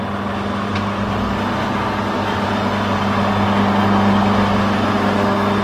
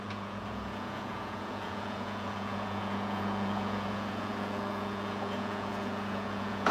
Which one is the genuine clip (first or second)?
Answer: first